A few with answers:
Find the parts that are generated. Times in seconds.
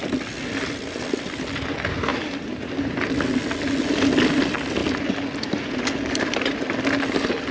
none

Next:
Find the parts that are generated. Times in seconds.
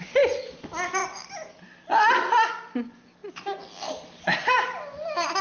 3.2-5.4